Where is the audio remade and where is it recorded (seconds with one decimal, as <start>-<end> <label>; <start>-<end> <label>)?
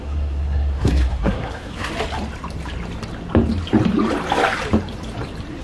0.0-1.9 remade; 1.9-5.6 recorded